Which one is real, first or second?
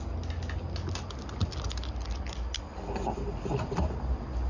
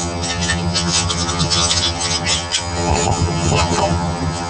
first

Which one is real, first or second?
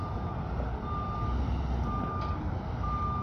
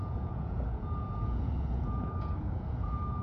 first